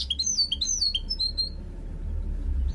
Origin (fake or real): real